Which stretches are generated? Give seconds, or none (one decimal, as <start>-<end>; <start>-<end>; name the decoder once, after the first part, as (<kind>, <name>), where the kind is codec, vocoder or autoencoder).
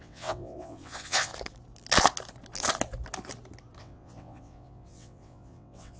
0.0-1.3 (vocoder, WaveNeXt); 3.8-6.0